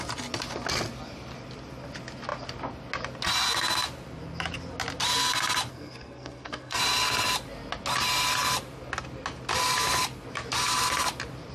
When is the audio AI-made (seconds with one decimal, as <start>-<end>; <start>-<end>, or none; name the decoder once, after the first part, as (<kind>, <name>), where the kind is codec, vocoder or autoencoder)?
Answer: 5.7-6.8 (codec, SNAC)